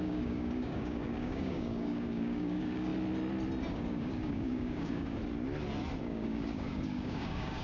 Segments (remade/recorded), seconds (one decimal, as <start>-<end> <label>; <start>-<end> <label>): 0.0-2.9 remade; 2.9-3.7 recorded; 3.7-5.2 remade; 5.2-6.0 recorded; 6.0-7.6 remade